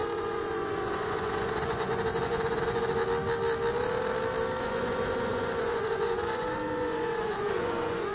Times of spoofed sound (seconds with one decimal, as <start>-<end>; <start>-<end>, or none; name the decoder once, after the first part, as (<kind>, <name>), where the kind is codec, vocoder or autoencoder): 0.0-3.0 (vocoder, Vocos); 4.6-8.1